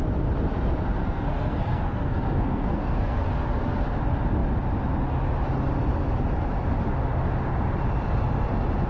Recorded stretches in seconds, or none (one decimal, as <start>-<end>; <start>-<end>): 0.0-1.0; 3.3-8.9